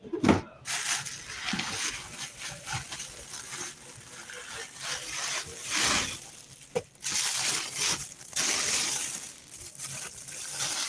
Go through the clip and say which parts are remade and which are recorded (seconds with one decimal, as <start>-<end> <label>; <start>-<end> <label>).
0.0-10.9 recorded